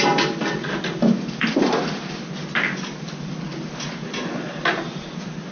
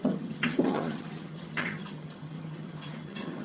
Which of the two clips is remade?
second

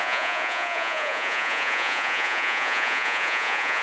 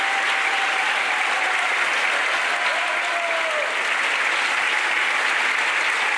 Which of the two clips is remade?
first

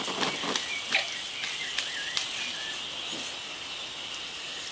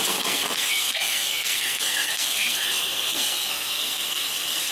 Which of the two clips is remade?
second